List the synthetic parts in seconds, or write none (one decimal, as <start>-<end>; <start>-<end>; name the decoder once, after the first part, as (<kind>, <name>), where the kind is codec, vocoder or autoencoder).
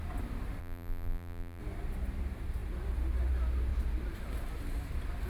0.6-1.6 (vocoder, BigVGAN v2)